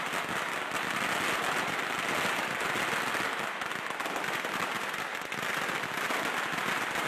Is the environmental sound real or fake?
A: real